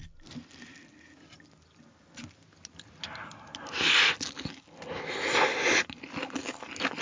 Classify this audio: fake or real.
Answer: real